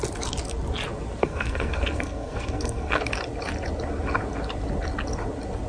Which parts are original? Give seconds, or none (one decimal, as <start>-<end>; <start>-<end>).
0.0-1.2; 3.0-5.7